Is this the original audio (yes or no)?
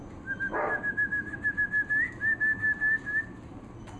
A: yes